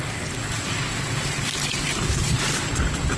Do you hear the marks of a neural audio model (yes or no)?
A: no